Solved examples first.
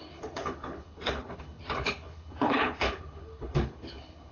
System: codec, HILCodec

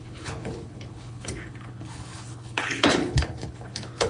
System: codec, HILCodec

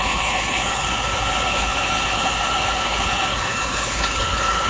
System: codec, HILCodec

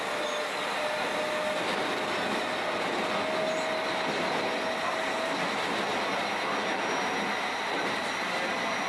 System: none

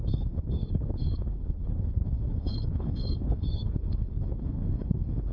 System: codec, HILCodec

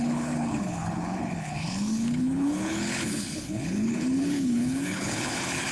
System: codec, HILCodec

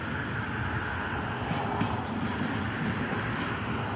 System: none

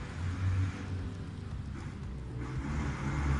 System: none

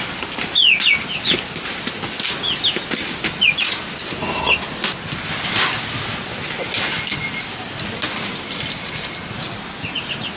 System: none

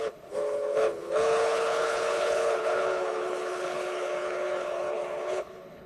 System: codec, HILCodec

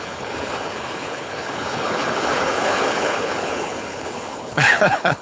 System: codec, HILCodec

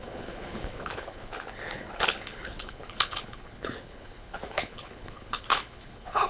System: codec, HILCodec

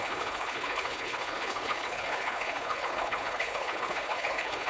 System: codec, HILCodec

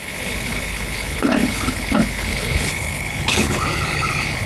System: codec, HILCodec